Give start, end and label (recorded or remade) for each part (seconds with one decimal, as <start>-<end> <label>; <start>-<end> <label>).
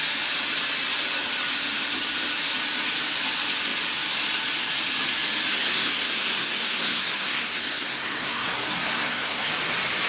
0.0-5.5 recorded; 5.5-9.5 remade; 9.5-10.1 recorded